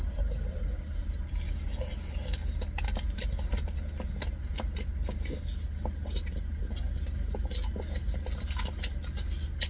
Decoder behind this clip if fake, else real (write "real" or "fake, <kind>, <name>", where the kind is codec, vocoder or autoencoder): real